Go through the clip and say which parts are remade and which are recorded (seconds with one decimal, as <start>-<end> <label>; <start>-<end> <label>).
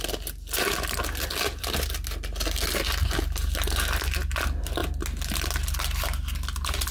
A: 0.0-6.9 recorded